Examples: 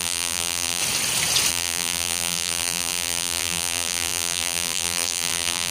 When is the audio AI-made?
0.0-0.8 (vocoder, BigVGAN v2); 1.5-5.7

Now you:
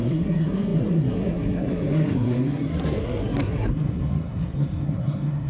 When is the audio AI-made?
0.0-5.5 (codec, SNAC)

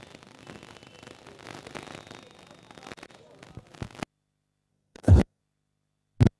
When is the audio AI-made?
4.7-5.4 (codec, SNAC)

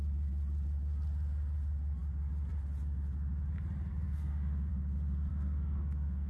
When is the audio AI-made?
3.9-4.7 (codec, SNAC); 5.3-6.3